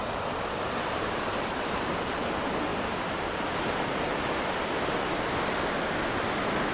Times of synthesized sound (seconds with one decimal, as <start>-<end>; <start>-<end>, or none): 0.0-1.9; 2.7-3.3